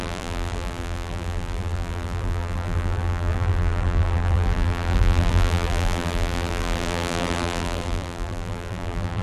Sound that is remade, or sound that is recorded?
remade